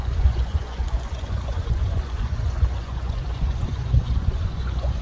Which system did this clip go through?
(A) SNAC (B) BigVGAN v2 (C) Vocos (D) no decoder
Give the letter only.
C